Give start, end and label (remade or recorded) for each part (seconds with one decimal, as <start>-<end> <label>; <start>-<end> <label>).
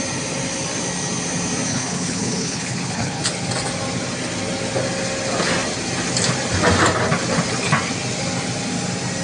0.0-1.7 recorded; 1.7-3.2 remade; 3.2-9.2 recorded